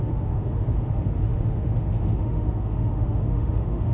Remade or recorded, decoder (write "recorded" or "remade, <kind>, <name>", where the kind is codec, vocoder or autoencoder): remade, autoencoder, DAC-VAE